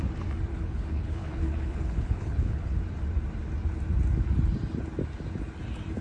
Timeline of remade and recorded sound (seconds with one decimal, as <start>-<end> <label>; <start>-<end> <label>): 0.0-0.5 recorded; 0.5-2.8 remade; 2.8-6.0 recorded